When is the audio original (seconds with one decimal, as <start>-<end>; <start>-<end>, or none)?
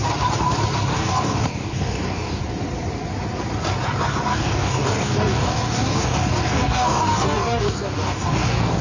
0.0-0.9; 2.4-4.3